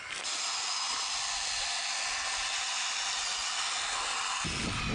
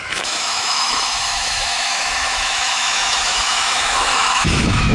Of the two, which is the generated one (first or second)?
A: second